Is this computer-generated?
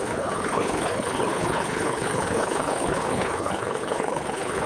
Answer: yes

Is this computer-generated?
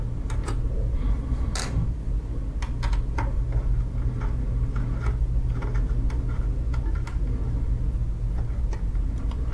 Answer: no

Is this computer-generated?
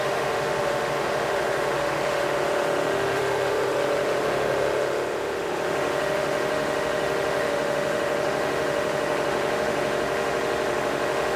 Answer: yes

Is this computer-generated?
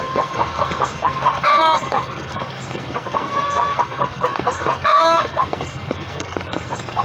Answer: yes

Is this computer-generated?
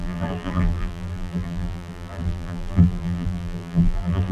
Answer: yes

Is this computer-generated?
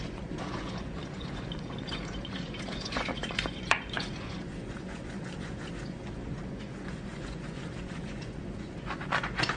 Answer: yes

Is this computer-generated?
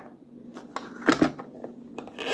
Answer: no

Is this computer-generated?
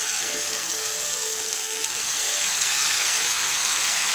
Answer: yes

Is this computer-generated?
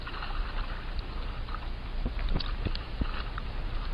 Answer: no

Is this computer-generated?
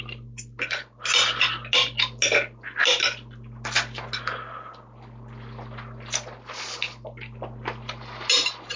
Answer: no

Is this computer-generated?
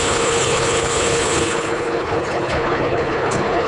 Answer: yes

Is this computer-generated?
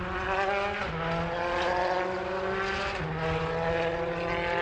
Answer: no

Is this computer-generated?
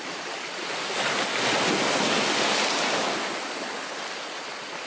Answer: no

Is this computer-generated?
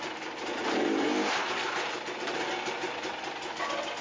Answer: no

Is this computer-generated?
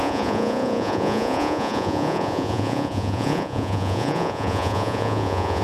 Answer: yes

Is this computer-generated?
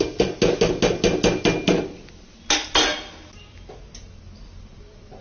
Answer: no